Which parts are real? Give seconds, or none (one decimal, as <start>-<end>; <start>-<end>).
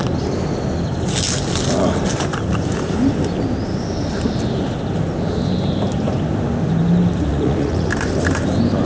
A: 0.0-7.3; 7.9-8.8